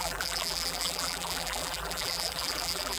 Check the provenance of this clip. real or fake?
fake